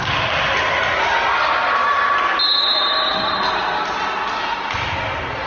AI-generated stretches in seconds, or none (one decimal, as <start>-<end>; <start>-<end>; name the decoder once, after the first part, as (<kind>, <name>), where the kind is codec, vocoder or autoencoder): none